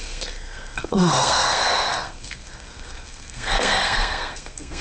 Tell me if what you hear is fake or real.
fake